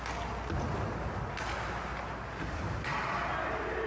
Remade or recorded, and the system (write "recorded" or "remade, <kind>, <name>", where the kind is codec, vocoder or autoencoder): recorded